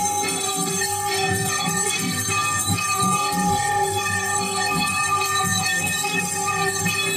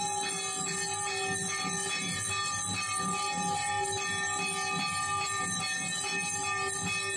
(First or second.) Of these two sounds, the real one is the second